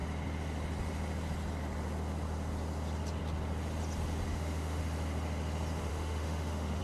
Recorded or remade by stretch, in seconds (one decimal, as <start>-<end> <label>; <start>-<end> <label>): 0.0-4.3 recorded; 4.3-4.8 remade; 4.8-5.9 recorded; 5.9-6.8 remade